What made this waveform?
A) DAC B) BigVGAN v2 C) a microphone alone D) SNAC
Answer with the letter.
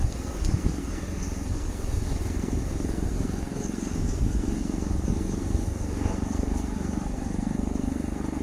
D